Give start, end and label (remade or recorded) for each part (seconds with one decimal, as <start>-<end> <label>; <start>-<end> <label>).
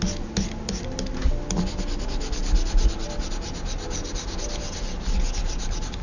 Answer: 0.0-6.0 recorded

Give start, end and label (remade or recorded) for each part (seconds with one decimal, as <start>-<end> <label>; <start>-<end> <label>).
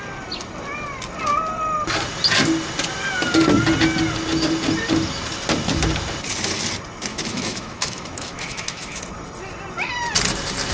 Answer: 0.0-7.1 recorded; 7.1-9.0 remade; 9.0-10.7 recorded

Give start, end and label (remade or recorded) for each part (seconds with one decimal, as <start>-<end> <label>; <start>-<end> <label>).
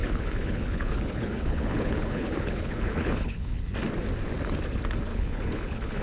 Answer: 0.0-3.6 remade; 3.6-5.1 recorded; 5.1-6.0 remade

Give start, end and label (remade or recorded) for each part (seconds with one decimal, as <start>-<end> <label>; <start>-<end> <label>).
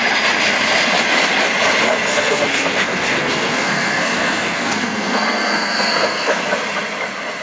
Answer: 0.0-2.1 recorded; 2.1-6.5 remade; 6.5-7.4 recorded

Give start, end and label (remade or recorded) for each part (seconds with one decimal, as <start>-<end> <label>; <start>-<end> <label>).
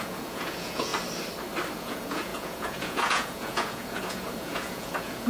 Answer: 0.0-0.9 remade; 0.9-1.8 recorded; 1.8-5.3 remade